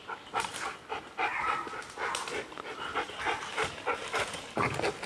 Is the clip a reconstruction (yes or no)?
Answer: no